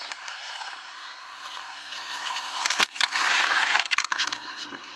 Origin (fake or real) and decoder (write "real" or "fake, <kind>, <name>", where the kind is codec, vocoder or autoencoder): fake, codec, SNAC